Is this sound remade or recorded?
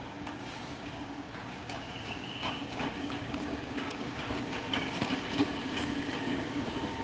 remade